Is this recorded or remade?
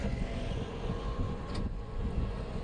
remade